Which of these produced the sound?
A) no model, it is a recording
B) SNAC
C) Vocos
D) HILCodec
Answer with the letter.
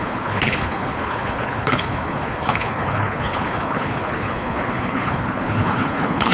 D